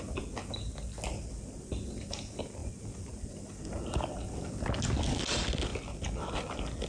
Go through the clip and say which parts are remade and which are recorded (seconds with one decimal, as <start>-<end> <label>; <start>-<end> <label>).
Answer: 0.0-6.9 recorded